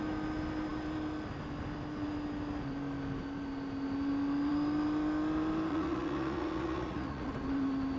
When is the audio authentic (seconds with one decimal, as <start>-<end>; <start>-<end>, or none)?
0.0-5.7; 7.3-8.0